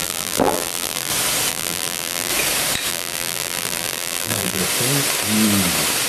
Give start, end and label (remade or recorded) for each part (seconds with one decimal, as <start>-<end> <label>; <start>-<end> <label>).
0.0-1.1 remade; 1.1-1.5 recorded; 1.5-2.3 remade; 2.3-2.9 recorded; 2.9-4.6 remade; 4.6-6.1 recorded